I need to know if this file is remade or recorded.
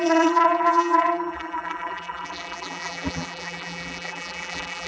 remade